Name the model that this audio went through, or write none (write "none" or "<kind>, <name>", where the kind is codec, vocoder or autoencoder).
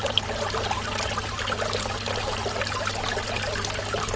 none